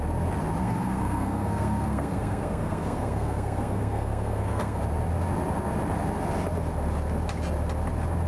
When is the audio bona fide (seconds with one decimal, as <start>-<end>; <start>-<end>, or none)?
0.0-0.6; 4.8-8.3